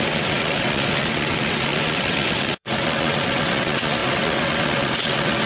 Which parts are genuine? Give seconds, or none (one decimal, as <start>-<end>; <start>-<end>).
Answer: none